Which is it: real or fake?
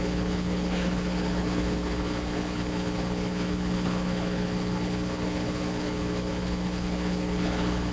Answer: fake